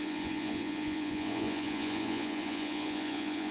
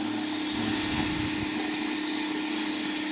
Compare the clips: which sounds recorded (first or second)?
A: second